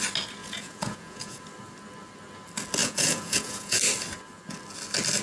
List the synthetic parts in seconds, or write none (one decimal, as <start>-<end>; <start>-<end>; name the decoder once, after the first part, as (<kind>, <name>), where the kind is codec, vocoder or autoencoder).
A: 0.4-1.4 (vocoder, Vocos); 2.8-3.8